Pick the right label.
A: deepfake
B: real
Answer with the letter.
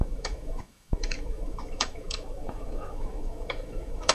A